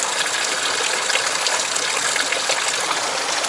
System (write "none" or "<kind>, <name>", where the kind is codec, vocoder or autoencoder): none